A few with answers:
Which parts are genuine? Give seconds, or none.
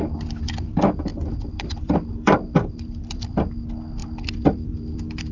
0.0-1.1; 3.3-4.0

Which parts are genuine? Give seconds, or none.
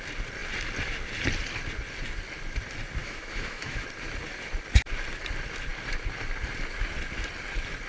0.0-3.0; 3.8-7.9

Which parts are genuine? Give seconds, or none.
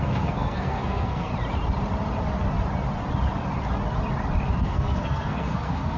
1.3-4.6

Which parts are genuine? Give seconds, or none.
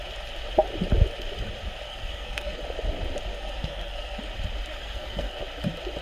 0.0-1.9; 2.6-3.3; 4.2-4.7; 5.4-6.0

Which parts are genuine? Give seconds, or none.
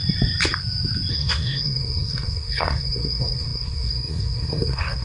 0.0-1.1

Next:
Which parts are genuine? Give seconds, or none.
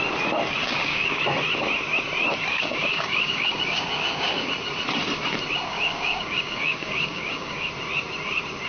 0.0-0.6; 1.2-2.5; 4.5-5.7; 7.7-8.7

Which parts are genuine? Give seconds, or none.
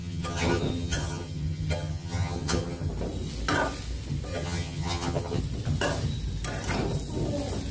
2.9-4.3; 5.4-7.7